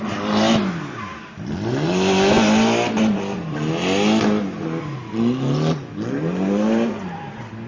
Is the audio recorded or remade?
recorded